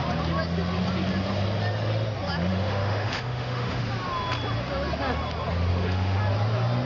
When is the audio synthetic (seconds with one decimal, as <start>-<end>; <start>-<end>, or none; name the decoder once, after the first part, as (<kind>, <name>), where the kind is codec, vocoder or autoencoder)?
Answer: 2.5-3.8 (autoencoder, DAC-VAE); 5.7-6.2

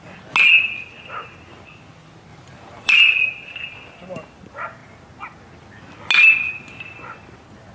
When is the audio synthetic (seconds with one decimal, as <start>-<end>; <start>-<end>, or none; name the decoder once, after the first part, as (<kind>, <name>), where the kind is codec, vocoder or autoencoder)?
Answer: 2.3-2.9 (vocoder, BigVGAN v2)

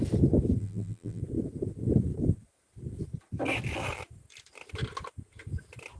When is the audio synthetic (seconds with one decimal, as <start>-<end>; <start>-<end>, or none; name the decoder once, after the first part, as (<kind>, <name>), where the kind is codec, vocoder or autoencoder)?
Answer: 0.6-1.2 (vocoder, BigVGAN v2)

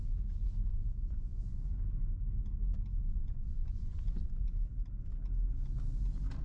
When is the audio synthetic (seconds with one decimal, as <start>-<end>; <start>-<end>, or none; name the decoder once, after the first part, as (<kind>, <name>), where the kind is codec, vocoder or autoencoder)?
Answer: 0.7-1.6 (vocoder, Vocos); 3.1-4.5

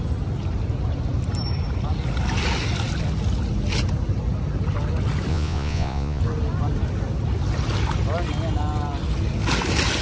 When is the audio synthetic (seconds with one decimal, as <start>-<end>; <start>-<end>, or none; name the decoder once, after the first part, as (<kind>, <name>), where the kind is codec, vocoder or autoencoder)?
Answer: 5.3-6.2 (vocoder, Vocos)

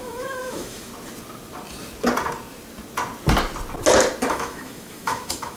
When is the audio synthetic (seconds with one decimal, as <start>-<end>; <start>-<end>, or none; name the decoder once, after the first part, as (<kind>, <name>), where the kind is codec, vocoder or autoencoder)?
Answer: 0.0-0.9 (autoencoder, DAC-VAE); 4.3-5.6

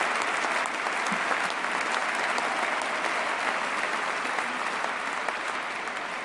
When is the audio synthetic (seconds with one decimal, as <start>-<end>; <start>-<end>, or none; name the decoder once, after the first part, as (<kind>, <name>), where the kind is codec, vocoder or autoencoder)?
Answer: none

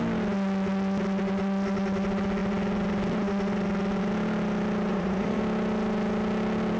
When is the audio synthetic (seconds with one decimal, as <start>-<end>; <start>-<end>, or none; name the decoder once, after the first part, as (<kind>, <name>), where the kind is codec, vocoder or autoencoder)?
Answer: 4.9-5.4 (vocoder, Vocos)